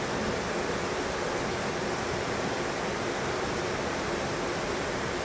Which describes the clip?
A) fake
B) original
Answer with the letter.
B